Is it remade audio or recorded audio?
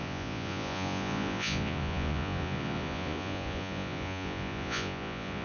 remade